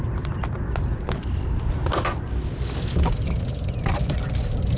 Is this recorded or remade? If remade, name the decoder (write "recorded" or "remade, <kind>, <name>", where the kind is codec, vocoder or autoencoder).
recorded